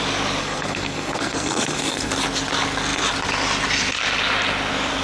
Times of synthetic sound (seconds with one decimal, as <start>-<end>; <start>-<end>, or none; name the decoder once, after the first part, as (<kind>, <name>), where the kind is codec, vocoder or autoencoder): 0.4-2.1 (codec, SNAC)